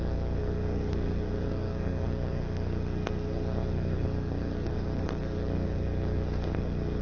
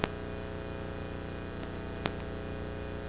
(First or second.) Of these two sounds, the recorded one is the second